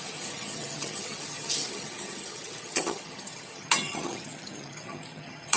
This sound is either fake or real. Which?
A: fake